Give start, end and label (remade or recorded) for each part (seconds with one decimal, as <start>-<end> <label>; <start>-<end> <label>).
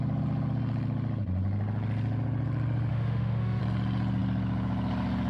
0.0-2.9 recorded; 2.9-3.6 remade; 3.6-5.3 recorded